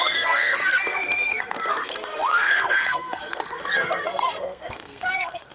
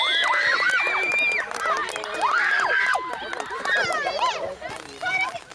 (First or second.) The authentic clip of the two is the second